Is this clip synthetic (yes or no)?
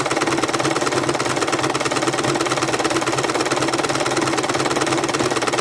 no